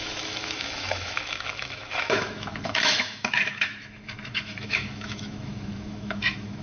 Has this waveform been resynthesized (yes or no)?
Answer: yes